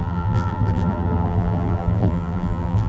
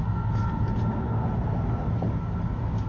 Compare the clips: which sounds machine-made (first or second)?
first